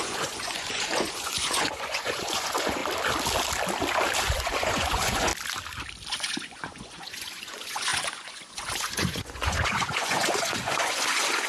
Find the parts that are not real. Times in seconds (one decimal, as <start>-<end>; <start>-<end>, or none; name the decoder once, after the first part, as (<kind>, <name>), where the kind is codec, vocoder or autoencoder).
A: 0.0-2.8 (vocoder, Vocos); 4.2-5.3; 6.1-11.5